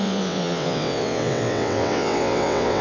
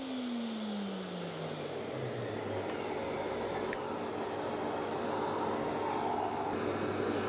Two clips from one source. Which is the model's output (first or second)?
first